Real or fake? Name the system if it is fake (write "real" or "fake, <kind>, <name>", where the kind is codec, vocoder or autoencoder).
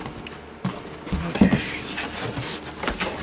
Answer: real